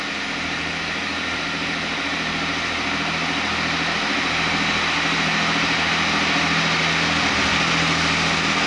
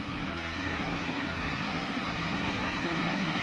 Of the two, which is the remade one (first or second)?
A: second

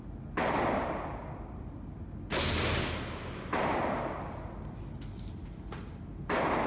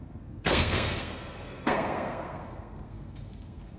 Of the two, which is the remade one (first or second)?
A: second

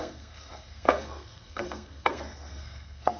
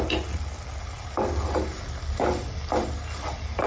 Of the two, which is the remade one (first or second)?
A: first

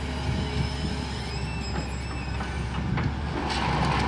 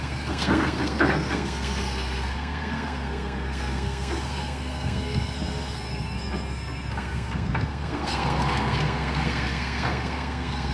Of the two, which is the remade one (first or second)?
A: second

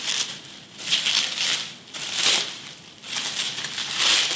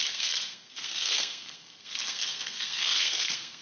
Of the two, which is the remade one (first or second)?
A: second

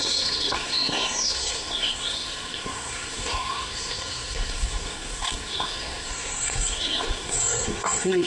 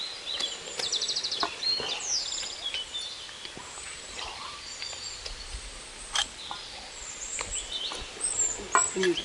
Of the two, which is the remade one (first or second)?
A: first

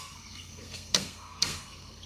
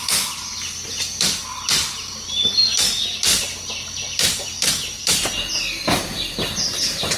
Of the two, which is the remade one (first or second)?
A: first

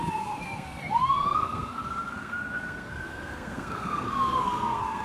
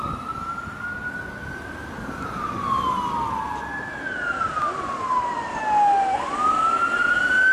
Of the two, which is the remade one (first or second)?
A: first